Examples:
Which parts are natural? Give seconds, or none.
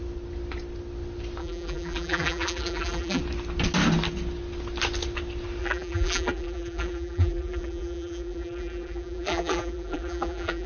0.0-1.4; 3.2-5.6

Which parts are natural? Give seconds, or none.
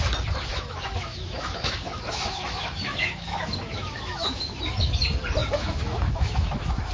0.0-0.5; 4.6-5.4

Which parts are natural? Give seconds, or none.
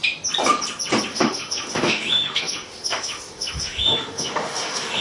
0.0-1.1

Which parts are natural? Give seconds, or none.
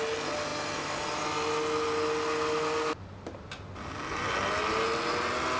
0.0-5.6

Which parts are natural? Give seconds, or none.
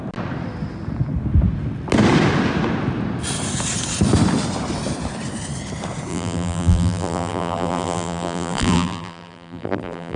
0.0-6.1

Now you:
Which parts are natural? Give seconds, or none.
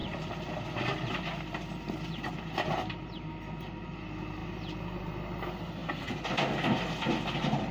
0.0-7.7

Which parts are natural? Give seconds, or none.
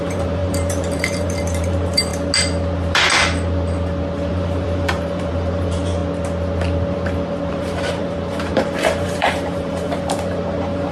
2.1-4.3; 6.0-7.5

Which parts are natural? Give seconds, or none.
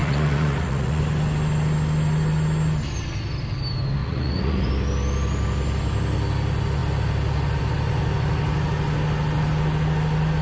1.0-4.0; 4.7-10.4